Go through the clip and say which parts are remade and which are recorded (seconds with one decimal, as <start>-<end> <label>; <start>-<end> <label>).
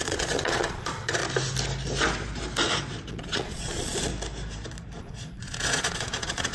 0.0-1.2 remade; 1.2-3.1 recorded; 3.1-4.1 remade; 4.1-5.0 recorded; 5.0-6.5 remade